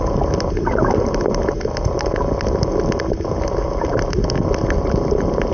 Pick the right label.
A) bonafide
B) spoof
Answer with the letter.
A